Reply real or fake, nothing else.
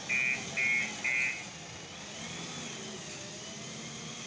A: real